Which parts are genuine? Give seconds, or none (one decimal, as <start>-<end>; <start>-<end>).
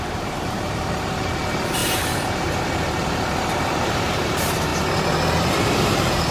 4.7-5.6